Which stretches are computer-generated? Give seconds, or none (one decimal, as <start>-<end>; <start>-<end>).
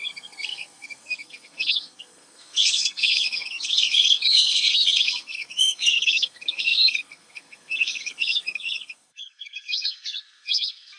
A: 0.0-11.0